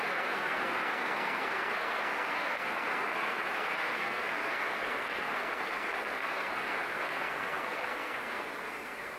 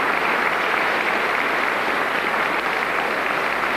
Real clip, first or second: second